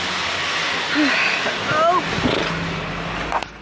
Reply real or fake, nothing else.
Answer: real